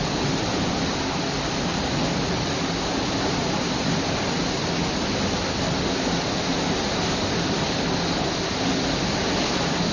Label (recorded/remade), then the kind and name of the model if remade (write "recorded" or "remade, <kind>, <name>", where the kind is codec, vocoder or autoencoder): recorded